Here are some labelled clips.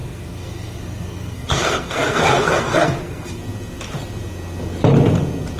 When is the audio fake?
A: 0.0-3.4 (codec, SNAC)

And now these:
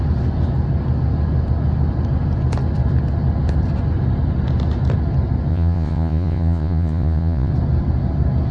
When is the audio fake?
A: 5.5-7.5 (vocoder, Vocos)

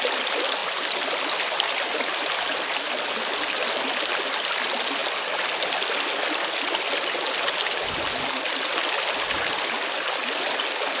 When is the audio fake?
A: none

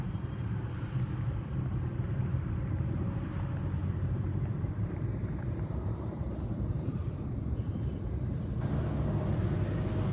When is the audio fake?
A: 3.8-8.5 (vocoder, BigVGAN v2)

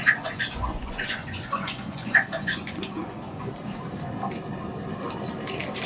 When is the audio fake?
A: 0.0-3.5 (vocoder, Vocos)

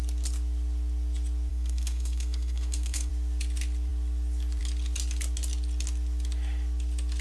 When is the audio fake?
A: 1.5-3.1 (codec, SNAC)

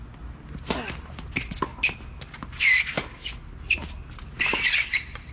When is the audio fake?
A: none